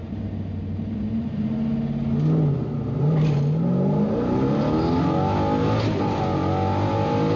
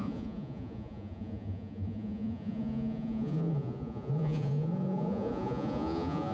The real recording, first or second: first